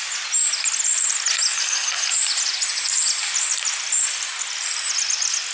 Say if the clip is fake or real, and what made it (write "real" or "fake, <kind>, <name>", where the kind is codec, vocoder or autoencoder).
real